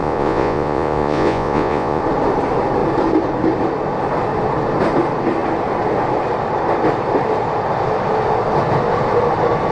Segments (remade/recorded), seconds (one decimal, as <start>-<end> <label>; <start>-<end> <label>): 0.0-2.0 remade; 2.0-9.7 recorded